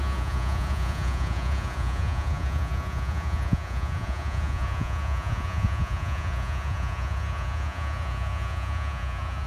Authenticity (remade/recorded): remade